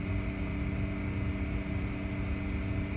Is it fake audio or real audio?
real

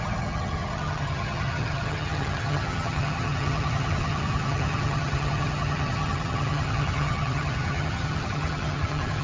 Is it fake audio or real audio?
fake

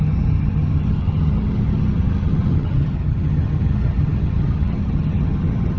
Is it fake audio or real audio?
fake